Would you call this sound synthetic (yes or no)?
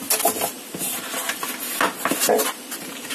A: no